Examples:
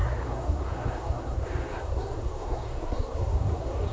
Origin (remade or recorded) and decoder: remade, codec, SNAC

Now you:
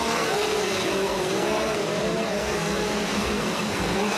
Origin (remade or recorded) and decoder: remade, codec, SNAC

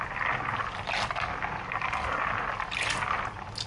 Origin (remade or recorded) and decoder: recorded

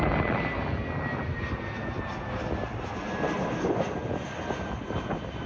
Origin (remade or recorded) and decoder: recorded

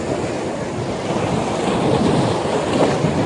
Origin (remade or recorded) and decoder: recorded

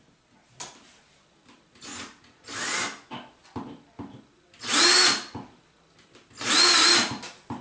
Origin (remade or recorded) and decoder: recorded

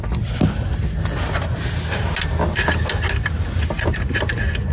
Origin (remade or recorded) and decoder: recorded